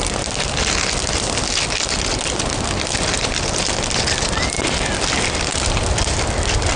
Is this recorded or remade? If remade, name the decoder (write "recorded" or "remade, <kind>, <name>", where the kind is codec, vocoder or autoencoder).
recorded